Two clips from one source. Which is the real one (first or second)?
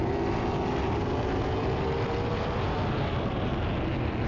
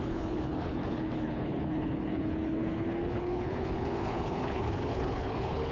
first